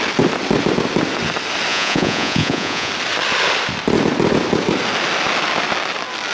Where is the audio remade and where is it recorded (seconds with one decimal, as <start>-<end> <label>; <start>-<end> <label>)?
0.0-1.7 recorded; 1.7-2.9 remade; 2.9-6.3 recorded